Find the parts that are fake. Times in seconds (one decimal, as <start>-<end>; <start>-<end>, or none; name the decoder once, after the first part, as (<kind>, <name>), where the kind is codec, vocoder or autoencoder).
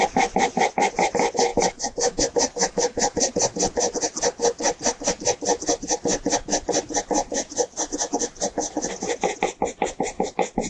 1.5-2.2 (autoencoder, DAC-VAE); 2.6-3.2